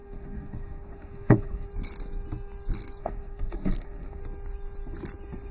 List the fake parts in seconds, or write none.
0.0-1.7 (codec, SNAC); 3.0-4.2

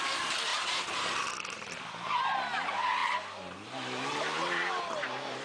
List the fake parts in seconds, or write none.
0.5-1.7 (vocoder, BigVGAN v2)

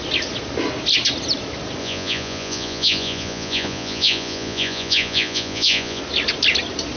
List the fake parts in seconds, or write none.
1.8-6.0 (vocoder, Vocos)

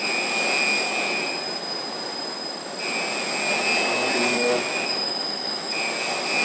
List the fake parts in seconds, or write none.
4.3-5.7 (autoencoder, DAC-VAE)

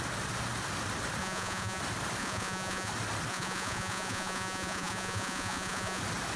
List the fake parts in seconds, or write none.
1.2-1.8 (vocoder, Vocos); 2.2-2.9; 3.3-6.0

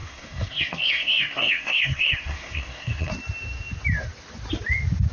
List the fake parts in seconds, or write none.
0.0-3.1 (codec, SNAC)

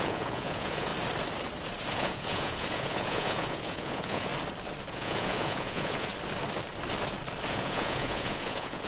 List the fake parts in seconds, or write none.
0.0-0.9 (vocoder, Vocos); 1.9-4.3; 4.9-6.1; 7.5-8.9